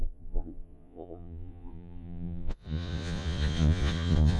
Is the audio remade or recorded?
remade